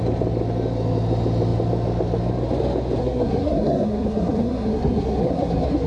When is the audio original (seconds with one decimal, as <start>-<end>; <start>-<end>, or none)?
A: 0.0-3.0